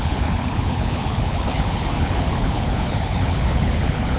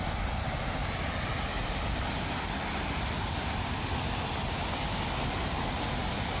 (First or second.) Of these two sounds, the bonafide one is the second